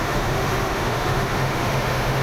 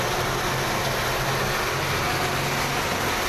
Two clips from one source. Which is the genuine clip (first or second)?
second